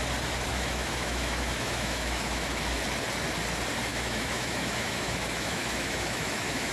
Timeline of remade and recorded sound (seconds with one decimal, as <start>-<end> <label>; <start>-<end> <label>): 0.0-0.5 recorded; 0.5-2.6 remade; 2.6-3.9 recorded; 3.9-6.7 remade